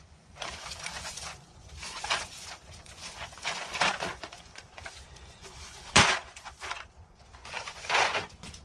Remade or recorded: remade